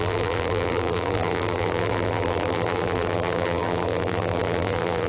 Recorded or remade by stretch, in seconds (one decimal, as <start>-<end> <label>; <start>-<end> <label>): 0.0-5.1 remade